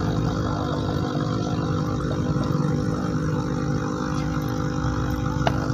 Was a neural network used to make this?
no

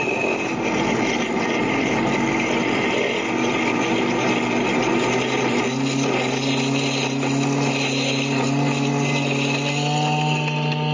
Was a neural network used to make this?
no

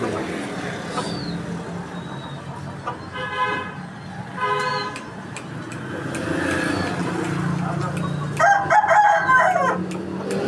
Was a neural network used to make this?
no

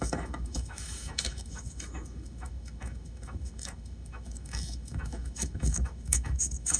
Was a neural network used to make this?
yes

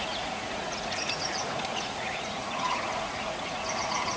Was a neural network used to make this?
yes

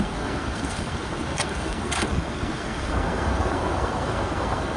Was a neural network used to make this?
yes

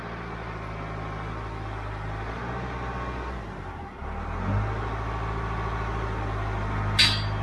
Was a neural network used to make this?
no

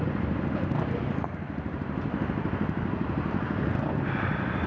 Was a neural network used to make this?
no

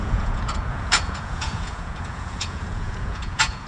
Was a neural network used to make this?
yes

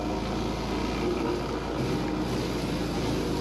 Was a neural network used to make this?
no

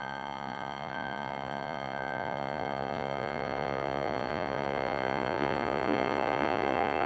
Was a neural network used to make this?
yes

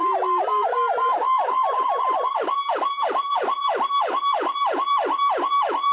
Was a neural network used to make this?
no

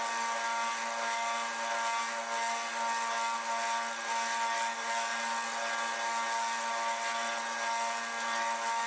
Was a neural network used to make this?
no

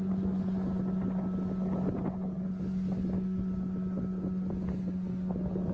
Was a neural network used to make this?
no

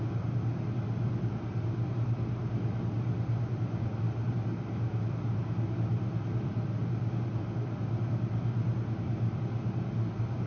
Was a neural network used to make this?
no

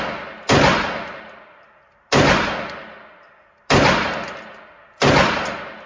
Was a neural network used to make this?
no